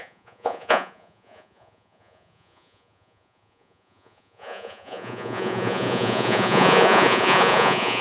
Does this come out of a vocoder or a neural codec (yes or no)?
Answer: yes